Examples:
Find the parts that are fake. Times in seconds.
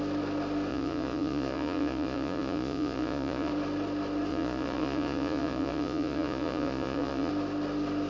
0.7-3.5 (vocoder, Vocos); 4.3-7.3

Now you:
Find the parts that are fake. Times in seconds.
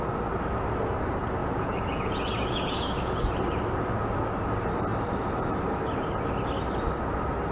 1.4-3.3 (vocoder, Vocos)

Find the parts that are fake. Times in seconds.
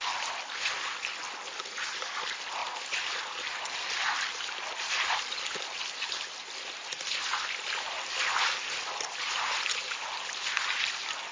none